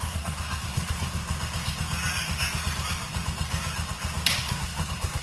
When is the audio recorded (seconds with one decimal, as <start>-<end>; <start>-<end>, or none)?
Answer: 1.2-4.3